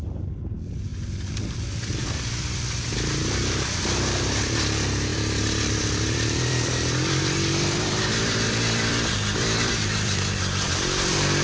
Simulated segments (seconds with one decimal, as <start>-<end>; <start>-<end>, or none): 0.0-0.9; 1.9-11.4

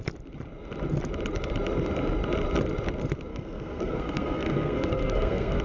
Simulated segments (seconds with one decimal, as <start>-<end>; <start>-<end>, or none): 3.3-5.6

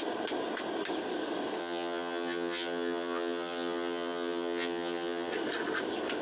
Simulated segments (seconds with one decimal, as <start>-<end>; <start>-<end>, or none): 1.6-5.3

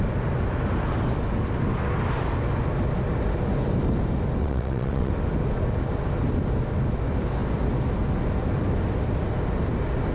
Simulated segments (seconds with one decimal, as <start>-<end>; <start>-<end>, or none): 4.4-5.1

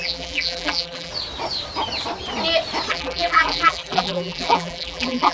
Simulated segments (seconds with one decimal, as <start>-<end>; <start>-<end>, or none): 0.0-1.1; 2.9-5.3

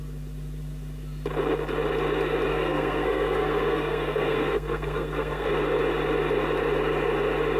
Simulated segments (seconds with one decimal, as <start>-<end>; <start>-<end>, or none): 2.5-5.5

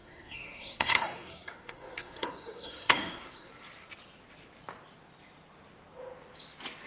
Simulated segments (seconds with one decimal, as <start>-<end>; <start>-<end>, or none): 0.0-3.5